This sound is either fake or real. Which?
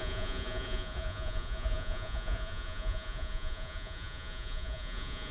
fake